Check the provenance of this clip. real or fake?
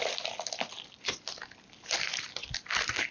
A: real